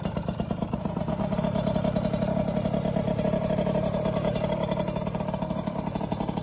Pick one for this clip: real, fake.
fake